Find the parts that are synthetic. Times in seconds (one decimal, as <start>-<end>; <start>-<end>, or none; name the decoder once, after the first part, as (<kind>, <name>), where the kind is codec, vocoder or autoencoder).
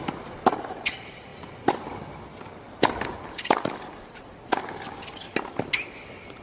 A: none